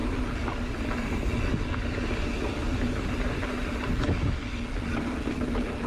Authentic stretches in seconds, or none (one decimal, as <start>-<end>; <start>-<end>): 0.0-5.9